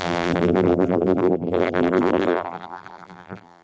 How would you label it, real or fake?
fake